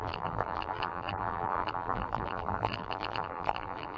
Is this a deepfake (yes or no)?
yes